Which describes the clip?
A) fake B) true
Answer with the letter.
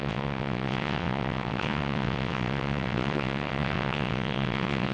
A